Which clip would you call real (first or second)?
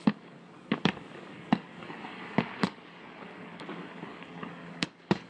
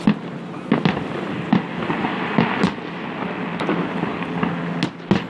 second